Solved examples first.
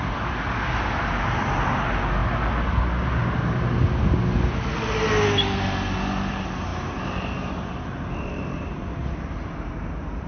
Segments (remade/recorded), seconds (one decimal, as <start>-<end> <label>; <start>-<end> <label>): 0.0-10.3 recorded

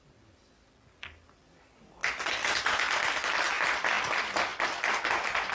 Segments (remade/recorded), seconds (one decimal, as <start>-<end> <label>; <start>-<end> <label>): 0.0-5.5 recorded

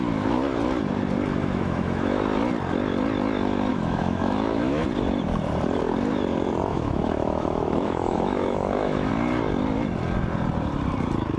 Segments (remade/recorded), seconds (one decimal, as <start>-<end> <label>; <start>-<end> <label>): 0.0-1.4 recorded; 1.4-2.2 remade; 2.2-3.7 recorded; 3.7-4.8 remade; 4.8-6.7 recorded; 6.7-9.1 remade; 9.1-11.4 recorded

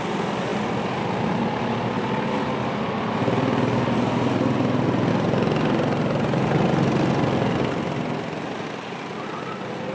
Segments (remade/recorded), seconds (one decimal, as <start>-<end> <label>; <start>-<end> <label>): 0.0-9.9 recorded

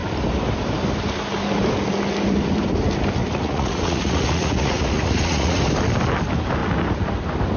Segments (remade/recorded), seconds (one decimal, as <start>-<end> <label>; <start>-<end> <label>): 0.0-3.2 recorded; 3.2-5.6 remade; 5.6-7.6 recorded

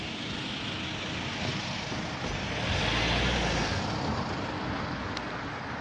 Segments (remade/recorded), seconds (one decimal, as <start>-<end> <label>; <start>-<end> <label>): 0.0-5.8 recorded